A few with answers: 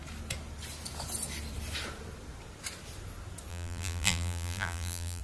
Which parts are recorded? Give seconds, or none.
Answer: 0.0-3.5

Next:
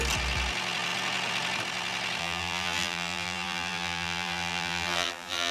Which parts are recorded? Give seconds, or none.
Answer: 0.0-2.2

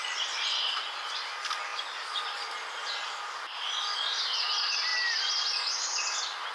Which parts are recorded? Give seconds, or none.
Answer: 0.0-6.5